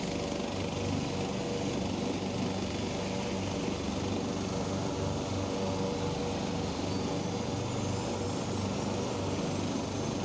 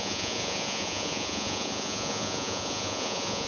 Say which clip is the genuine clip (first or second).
first